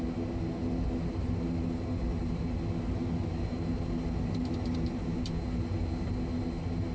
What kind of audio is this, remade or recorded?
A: recorded